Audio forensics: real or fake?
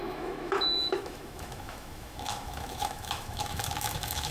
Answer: fake